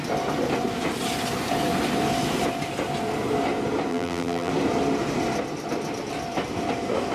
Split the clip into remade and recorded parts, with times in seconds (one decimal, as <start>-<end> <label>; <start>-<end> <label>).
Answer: 0.0-3.9 recorded; 3.9-4.5 remade; 4.5-7.1 recorded